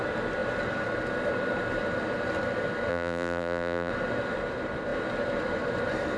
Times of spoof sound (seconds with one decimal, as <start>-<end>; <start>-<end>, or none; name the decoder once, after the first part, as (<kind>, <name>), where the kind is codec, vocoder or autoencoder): 2.9-3.9 (vocoder, BigVGAN v2)